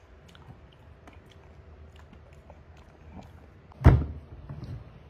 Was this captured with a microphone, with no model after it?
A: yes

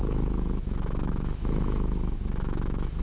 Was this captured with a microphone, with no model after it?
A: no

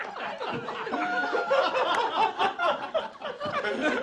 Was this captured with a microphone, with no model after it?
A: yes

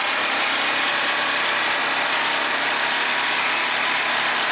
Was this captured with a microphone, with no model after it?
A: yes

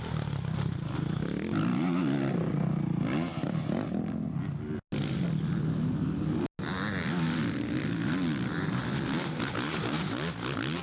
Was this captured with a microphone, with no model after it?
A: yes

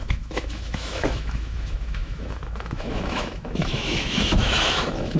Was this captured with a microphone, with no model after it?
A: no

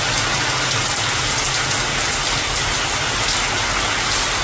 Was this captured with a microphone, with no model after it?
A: yes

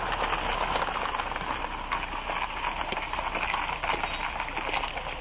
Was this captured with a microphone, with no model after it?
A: yes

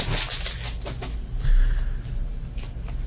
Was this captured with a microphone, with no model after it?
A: yes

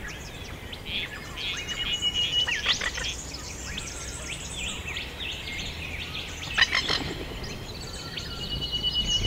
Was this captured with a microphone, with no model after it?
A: yes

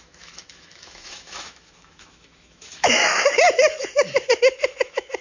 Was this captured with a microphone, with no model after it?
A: no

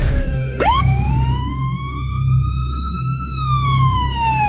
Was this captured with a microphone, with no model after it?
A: no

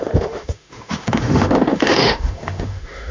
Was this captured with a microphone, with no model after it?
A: no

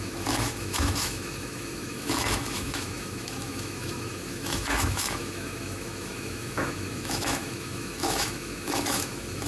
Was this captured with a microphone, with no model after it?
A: no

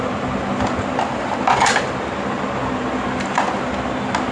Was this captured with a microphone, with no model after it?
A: yes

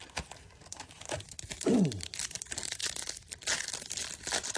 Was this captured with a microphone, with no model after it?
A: yes